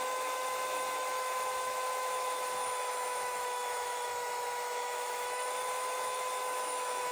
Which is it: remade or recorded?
remade